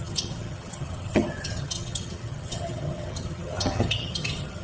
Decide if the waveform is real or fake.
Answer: fake